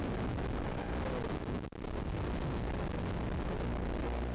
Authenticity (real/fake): real